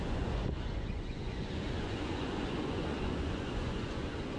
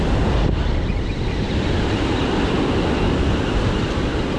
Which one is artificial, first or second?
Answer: first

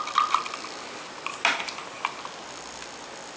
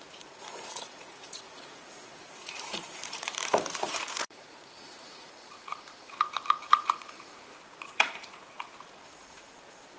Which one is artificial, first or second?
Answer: second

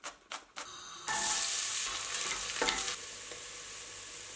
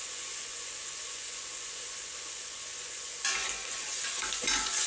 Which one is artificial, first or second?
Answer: second